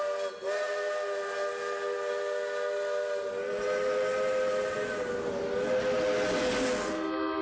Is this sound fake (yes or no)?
no